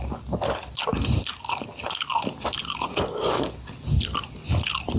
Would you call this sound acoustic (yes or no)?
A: yes